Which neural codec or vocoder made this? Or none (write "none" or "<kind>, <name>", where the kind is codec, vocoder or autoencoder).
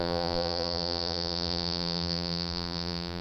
vocoder, BigVGAN v2